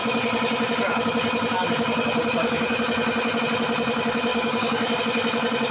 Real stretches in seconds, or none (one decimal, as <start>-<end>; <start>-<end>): 0.0-4.3; 5.0-5.7